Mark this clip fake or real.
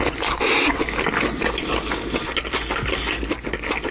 real